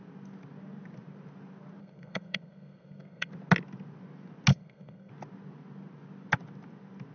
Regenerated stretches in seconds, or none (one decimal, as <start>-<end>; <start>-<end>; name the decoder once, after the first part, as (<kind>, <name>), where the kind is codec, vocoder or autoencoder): 1.8-3.3 (codec, SNAC); 4.5-5.1